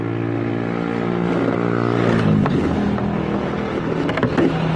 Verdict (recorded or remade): recorded